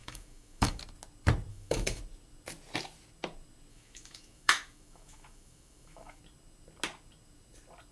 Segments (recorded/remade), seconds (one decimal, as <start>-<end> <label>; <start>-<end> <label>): 0.0-0.8 remade; 0.8-1.5 recorded; 1.5-2.0 remade; 2.0-3.7 recorded; 3.7-6.2 remade; 6.2-7.9 recorded